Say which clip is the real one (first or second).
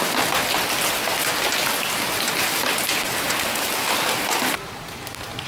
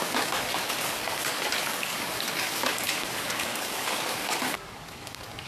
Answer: first